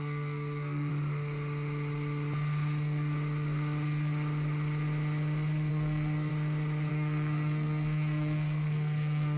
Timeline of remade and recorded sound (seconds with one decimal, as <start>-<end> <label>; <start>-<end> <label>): 0.0-0.9 remade; 0.9-5.7 recorded; 5.7-6.3 remade; 6.3-6.9 recorded; 6.9-9.4 remade